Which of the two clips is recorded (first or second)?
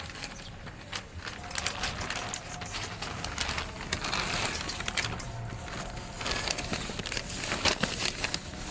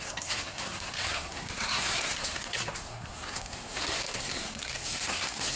first